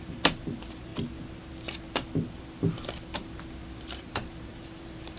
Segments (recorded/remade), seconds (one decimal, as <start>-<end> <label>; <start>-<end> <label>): 0.0-0.9 remade; 0.9-4.0 recorded; 4.0-5.2 remade